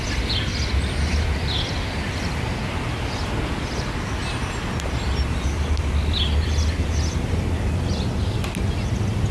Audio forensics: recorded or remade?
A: recorded